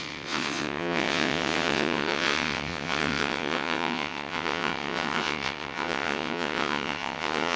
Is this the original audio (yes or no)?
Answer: no